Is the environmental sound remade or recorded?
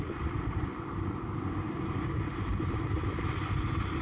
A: recorded